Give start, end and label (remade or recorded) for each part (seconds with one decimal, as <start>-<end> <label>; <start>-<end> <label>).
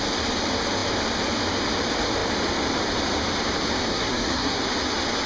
0.0-3.9 recorded; 3.9-4.6 remade; 4.6-5.3 recorded